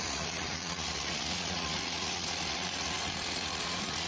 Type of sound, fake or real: fake